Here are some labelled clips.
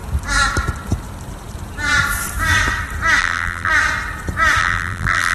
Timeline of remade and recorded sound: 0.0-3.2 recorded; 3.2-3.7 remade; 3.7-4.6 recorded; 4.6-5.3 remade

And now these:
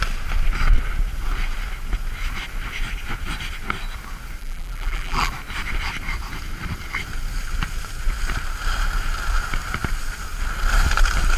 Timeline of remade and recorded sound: 0.0-4.4 recorded; 4.4-5.3 remade; 5.3-11.4 recorded

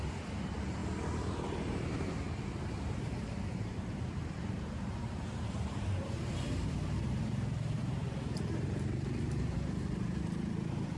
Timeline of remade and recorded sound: 0.0-0.8 remade; 0.8-1.5 recorded; 1.5-11.0 remade

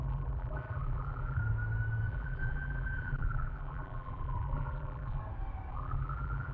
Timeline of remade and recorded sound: 0.0-1.4 remade; 1.4-2.1 recorded; 2.1-5.2 remade; 5.2-5.7 recorded; 5.7-6.5 remade

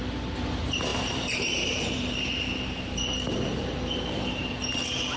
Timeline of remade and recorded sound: 0.0-0.9 recorded; 0.9-4.0 remade; 4.0-5.2 recorded